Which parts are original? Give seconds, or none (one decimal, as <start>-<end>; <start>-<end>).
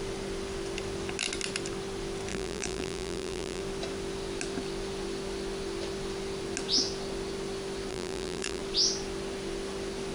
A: 0.0-2.3; 3.6-7.9; 8.6-10.1